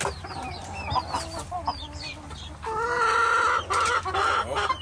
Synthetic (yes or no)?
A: no